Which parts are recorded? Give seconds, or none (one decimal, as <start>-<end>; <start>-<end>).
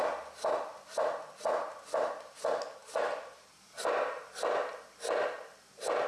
0.0-6.1